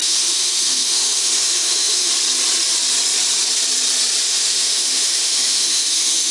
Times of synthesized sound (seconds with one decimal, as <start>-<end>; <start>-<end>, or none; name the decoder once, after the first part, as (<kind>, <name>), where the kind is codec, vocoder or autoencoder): 0.0-2.1 (autoencoder, DAC-VAE); 4.2-6.3

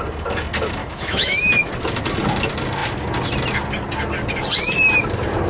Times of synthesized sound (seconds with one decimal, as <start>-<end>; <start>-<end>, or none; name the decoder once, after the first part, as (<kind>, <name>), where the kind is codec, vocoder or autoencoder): 0.8-1.5 (autoencoder, DAC-VAE)

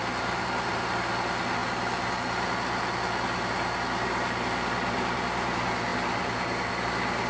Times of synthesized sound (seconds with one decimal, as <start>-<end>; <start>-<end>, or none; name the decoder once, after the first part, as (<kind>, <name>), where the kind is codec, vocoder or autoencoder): none

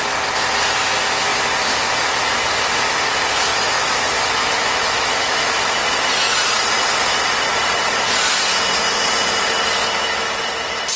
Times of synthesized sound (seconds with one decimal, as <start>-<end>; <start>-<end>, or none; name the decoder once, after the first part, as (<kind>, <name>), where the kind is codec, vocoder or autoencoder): 3.5-5.8 (autoencoder, DAC-VAE)

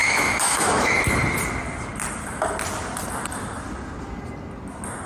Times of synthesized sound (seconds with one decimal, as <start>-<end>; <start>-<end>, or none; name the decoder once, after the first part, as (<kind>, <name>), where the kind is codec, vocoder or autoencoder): 0.0-1.0 (autoencoder, DAC-VAE)

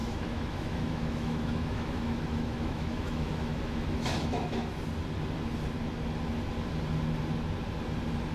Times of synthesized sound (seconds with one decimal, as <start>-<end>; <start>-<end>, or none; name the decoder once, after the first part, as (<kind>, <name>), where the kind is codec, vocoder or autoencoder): 0.0-4.8 (autoencoder, DAC-VAE)

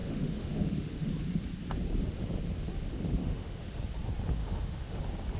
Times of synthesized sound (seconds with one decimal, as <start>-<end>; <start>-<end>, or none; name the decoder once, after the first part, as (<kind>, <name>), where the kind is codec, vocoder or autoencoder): 0.0-1.1 (autoencoder, DAC-VAE); 3.2-3.8; 4.4-5.0

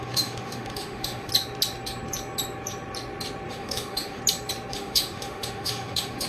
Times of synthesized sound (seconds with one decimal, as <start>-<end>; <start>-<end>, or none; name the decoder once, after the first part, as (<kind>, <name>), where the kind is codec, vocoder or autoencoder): 0.0-1.3 (autoencoder, DAC-VAE); 3.5-4.2; 4.7-6.3